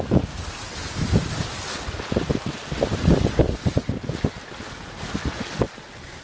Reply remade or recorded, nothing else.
recorded